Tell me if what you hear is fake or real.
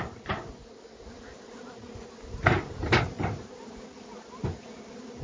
real